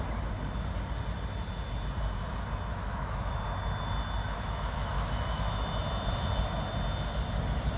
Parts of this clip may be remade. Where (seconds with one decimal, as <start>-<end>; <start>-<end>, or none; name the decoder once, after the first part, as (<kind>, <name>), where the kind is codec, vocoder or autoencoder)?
2.7-3.4 (autoencoder, DAC-VAE); 4.2-5.8